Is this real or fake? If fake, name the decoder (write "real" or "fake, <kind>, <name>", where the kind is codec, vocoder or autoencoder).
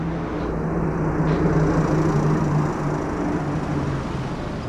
real